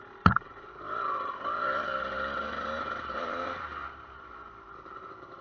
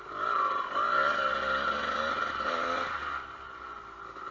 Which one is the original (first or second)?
second